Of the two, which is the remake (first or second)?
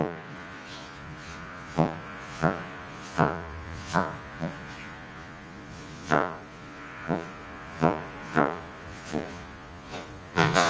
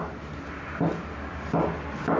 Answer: first